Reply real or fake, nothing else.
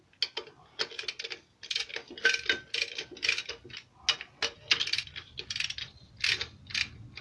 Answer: real